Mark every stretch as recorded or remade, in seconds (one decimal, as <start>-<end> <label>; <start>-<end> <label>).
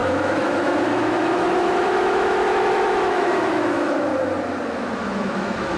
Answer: 0.0-4.1 remade; 4.1-4.7 recorded; 4.7-5.8 remade